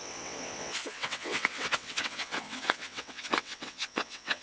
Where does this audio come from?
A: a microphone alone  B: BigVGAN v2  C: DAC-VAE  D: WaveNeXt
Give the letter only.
D